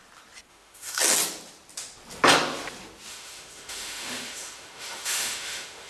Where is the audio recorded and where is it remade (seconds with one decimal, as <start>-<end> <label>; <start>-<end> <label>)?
0.0-0.5 recorded; 0.5-1.0 remade; 1.0-3.1 recorded; 3.1-5.9 remade